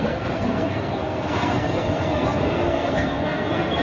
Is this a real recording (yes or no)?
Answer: no